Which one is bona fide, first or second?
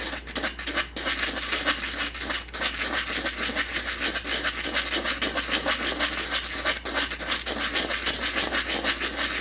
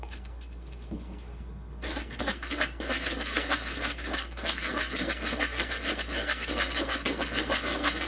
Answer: first